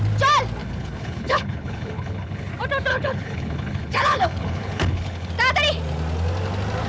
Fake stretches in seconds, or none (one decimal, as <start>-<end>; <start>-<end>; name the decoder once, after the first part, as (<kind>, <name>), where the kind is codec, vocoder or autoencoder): 0.6-2.5 (codec, HILCodec); 2.9-5.3